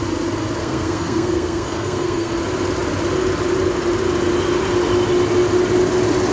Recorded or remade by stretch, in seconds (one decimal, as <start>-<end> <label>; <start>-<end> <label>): 0.0-0.6 recorded; 0.6-2.3 remade; 2.3-6.3 recorded